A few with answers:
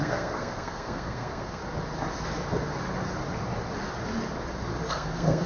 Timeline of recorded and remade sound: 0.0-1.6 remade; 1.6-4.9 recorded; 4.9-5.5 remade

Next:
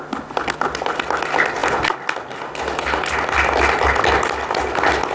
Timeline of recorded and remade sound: 0.0-5.1 recorded

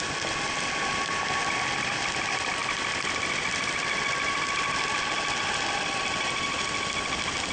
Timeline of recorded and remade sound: 0.0-7.5 recorded

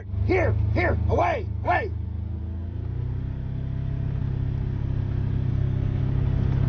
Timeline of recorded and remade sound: 0.0-5.5 recorded; 5.5-6.0 remade; 6.0-6.7 recorded